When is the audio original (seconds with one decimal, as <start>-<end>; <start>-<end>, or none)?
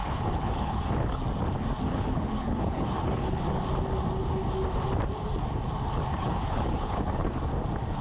0.9-1.9; 3.4-6.1; 7.3-8.0